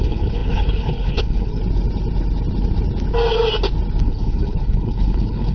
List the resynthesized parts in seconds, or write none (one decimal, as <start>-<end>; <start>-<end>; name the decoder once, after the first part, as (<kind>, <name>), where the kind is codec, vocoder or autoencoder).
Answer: 0.0-1.6 (codec, HILCodec); 4.0-5.5

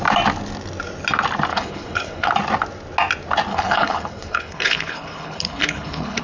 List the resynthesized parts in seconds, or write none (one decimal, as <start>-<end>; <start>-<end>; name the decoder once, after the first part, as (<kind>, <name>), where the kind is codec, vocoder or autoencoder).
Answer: 1.5-2.3 (codec, HILCodec); 3.5-6.2

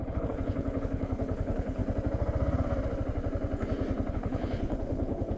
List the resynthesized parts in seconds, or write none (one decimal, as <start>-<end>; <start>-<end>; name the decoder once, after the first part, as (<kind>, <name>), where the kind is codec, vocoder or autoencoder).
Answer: 0.0-1.8 (codec, HILCodec); 4.1-5.4